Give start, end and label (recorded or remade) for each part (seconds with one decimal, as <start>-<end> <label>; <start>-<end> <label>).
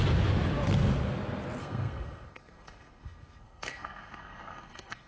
0.0-1.6 recorded; 1.6-5.1 remade